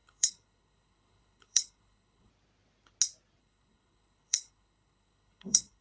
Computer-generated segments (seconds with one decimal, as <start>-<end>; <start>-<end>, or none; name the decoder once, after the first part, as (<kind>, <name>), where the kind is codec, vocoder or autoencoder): 0.0-2.3 (codec, HILCodec); 3.4-5.8